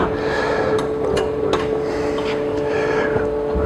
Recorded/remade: recorded